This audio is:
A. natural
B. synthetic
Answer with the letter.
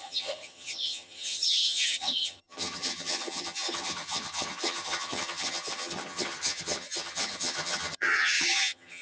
B